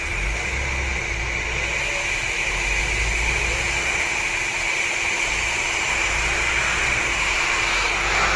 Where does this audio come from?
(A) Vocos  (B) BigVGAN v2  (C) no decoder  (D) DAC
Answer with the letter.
C